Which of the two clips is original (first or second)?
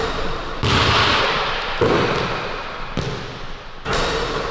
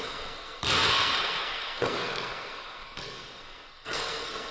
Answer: first